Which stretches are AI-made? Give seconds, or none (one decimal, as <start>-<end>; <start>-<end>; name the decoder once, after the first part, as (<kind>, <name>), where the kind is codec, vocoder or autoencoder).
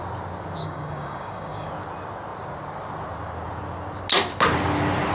0.6-1.7 (codec, DAC)